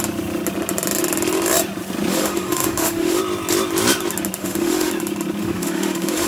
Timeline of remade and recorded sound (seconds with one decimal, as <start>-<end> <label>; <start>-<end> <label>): 0.0-2.1 recorded; 2.1-3.2 remade; 3.2-4.4 recorded; 4.4-4.9 remade; 4.9-5.4 recorded; 5.4-6.3 remade